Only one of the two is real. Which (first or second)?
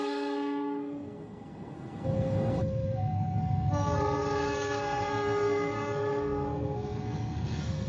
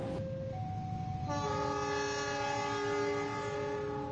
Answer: second